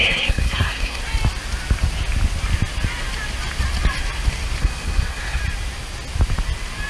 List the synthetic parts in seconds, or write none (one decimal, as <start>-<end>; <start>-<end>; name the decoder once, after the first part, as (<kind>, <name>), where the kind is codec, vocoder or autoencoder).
0.0-1.0 (codec, SNAC); 4.6-5.4